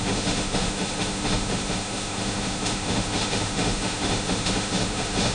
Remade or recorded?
remade